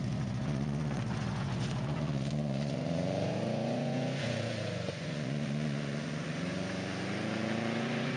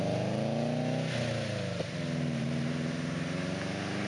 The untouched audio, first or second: second